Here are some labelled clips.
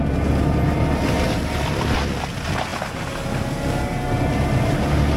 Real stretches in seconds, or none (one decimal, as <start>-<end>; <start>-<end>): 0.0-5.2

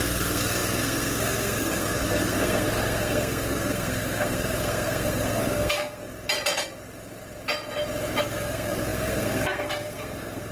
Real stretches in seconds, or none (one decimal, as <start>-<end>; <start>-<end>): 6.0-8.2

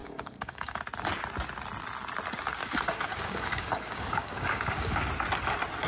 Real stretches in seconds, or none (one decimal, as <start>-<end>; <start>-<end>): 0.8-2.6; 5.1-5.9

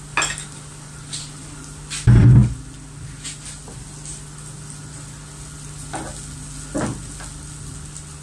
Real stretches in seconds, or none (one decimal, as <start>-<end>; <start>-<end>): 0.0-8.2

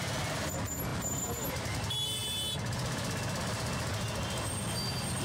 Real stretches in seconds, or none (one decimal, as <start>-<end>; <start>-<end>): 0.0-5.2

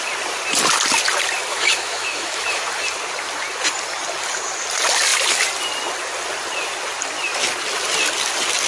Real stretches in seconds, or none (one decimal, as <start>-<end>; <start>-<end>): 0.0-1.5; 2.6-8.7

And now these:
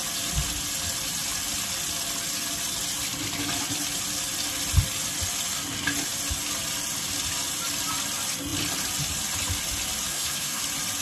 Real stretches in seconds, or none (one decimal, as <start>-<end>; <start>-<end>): 0.0-10.1; 10.6-11.0